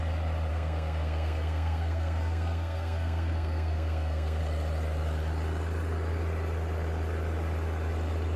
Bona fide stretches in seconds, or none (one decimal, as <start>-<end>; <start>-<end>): 0.0-0.5; 4.4-8.4